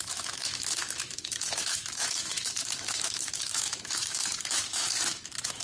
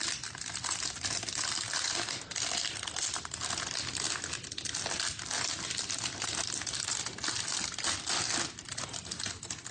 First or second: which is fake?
first